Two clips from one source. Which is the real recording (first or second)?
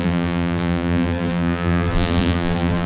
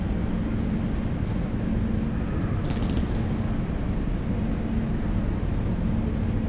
second